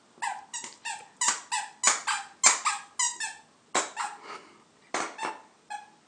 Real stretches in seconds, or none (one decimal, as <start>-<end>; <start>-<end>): 0.0-6.1